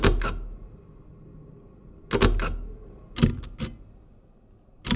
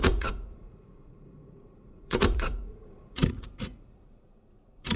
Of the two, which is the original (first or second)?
first